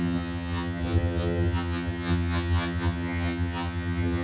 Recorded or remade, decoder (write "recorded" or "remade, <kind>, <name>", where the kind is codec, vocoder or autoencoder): remade, vocoder, HiFi-GAN